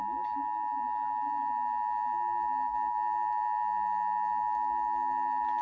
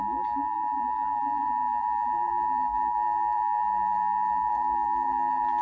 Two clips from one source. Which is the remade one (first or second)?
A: second